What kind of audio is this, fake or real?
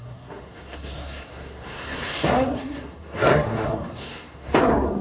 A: fake